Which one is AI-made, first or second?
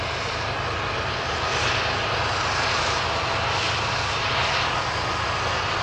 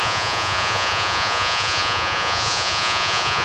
second